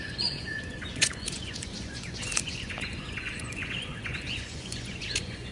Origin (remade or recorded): remade